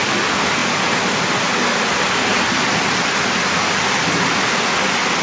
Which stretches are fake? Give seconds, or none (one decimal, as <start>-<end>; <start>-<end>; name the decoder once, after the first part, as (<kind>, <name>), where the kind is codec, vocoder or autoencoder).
none

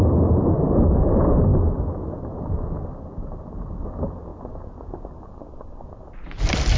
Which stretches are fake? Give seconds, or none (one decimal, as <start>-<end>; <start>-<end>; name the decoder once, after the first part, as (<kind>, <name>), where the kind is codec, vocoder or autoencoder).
none

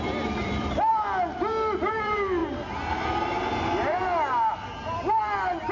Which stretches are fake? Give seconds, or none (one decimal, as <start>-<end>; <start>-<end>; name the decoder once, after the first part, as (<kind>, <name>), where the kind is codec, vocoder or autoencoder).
0.0-0.9 (vocoder, BigVGAN v2); 1.8-2.4; 2.9-4.0